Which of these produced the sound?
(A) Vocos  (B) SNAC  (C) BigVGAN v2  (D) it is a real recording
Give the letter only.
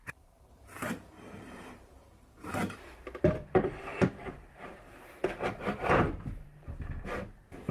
C